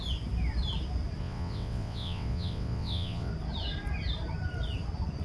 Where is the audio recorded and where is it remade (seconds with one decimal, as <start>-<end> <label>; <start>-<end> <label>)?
0.0-1.2 recorded; 1.2-3.3 remade; 3.3-5.2 recorded